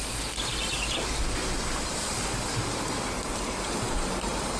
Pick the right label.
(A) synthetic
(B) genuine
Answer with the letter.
B